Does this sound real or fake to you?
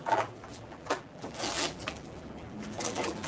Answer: fake